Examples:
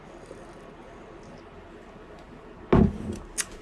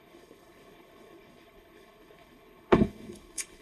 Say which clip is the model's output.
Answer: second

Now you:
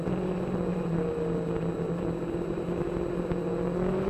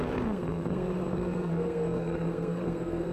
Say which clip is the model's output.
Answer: second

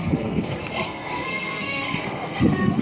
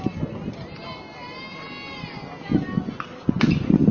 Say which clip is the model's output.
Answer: first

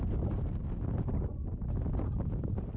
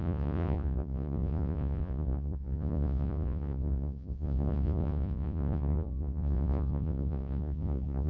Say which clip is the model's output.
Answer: second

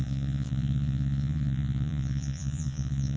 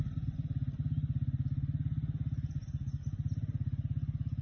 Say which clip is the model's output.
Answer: first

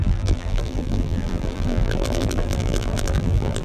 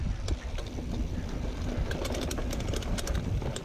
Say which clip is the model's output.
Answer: first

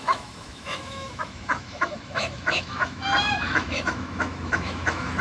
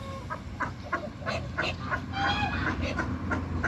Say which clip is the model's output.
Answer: first